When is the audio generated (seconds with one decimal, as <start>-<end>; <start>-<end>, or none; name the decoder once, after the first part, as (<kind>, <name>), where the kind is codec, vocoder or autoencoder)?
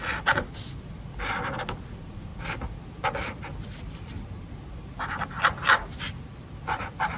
none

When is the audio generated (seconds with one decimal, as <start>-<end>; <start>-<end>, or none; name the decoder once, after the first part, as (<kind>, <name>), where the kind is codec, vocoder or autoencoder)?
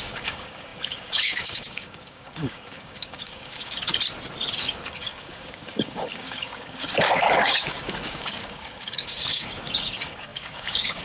0.0-3.9 (codec, DAC); 4.6-11.0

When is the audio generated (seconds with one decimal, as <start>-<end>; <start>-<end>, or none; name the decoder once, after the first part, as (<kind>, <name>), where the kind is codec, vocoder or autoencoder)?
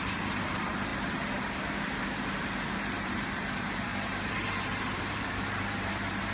0.0-6.3 (vocoder, BigVGAN v2)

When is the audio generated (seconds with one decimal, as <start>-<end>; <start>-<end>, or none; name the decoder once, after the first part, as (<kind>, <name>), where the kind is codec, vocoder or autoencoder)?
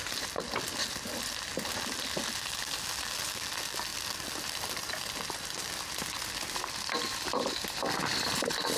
3.9-7.9 (vocoder, BigVGAN v2)